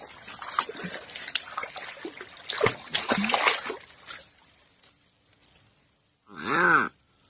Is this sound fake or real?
real